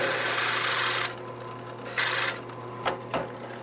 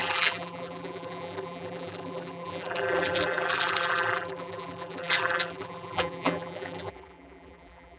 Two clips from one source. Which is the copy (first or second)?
second